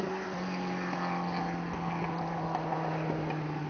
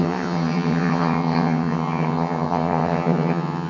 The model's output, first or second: second